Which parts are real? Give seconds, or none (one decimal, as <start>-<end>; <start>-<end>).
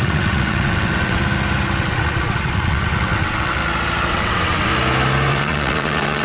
1.2-1.8; 3.6-4.1; 4.7-5.3